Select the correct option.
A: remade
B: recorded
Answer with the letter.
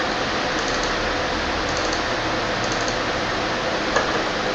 B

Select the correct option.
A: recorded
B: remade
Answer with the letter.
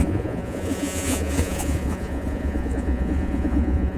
B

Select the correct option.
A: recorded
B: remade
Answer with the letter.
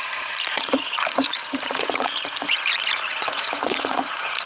B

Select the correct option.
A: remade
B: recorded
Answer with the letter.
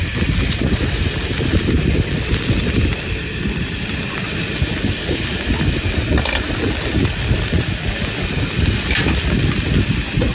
B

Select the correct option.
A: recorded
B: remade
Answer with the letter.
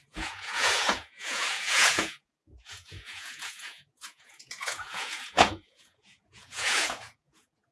B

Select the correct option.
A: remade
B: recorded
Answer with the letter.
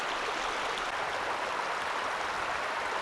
B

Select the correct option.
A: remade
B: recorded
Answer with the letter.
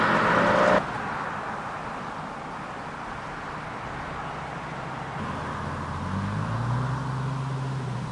B